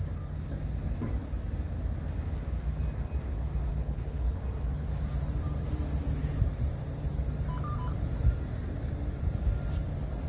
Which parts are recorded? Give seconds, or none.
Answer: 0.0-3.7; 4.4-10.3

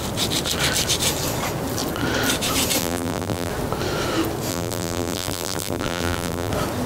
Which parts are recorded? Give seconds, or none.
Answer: 0.0-2.8; 3.5-4.5; 6.5-6.9

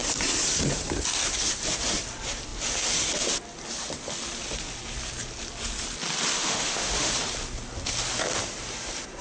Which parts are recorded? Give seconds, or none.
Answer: 0.0-6.3; 7.1-9.2

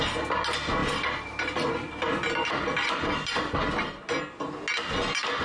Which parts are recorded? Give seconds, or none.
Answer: 0.0-0.8; 4.0-5.4

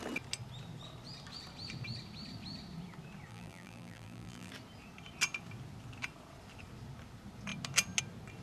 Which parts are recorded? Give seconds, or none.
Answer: 0.0-3.3; 4.5-8.4

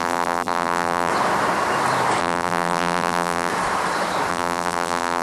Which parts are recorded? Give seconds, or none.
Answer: 1.1-2.2; 3.5-4.3

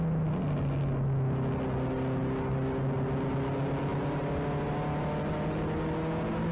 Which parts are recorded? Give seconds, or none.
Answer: 0.0-6.5